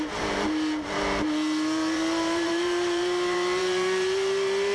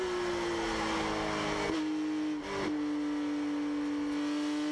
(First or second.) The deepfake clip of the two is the first